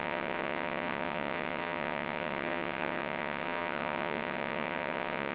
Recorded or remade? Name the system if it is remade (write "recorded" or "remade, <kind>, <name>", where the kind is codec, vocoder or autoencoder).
remade, vocoder, WaveNeXt